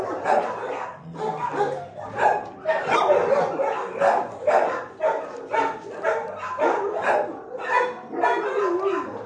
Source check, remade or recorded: recorded